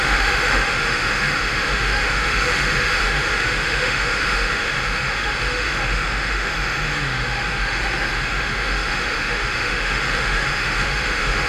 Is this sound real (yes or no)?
no